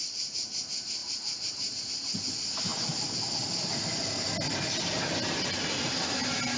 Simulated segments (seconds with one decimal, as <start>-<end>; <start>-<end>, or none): none